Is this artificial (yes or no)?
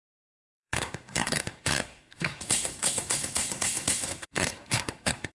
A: yes